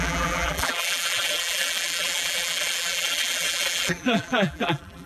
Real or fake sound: fake